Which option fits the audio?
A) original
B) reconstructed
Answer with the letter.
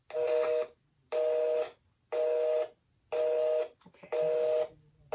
A